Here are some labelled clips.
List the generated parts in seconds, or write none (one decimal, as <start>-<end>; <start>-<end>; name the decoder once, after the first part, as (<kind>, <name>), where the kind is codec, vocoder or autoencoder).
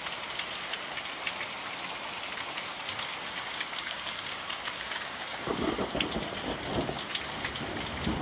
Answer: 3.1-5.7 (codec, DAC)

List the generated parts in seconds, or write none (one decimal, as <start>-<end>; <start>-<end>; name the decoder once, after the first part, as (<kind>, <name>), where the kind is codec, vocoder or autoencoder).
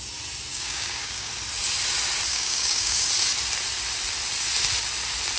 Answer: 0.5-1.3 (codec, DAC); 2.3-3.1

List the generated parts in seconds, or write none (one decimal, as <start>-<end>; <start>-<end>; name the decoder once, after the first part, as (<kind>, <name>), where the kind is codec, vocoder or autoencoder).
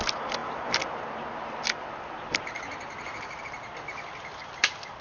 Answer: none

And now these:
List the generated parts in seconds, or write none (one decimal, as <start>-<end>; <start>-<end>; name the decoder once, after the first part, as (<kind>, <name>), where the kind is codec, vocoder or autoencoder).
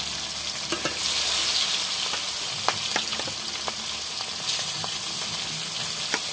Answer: none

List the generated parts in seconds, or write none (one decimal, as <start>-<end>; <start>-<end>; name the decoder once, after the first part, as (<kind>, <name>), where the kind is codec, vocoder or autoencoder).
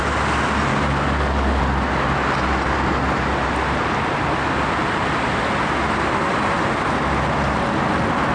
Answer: 0.7-1.6 (codec, DAC)